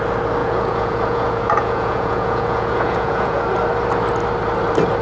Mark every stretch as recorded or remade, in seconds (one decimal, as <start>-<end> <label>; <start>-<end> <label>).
0.0-0.4 recorded; 0.4-3.4 remade; 3.4-5.0 recorded